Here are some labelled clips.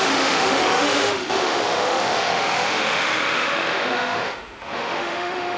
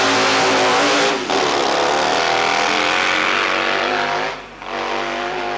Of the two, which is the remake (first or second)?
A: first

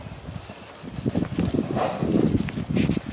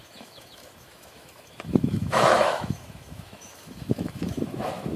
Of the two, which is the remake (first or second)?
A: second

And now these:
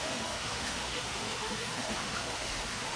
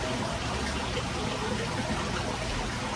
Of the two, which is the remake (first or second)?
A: first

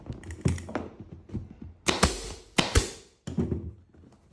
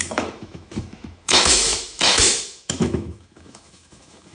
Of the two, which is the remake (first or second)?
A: second